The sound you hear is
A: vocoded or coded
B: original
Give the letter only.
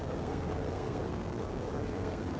A